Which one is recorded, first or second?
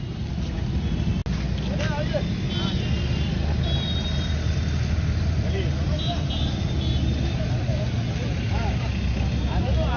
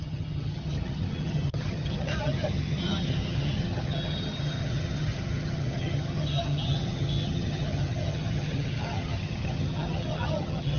first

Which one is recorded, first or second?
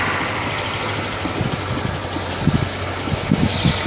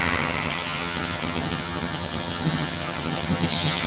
first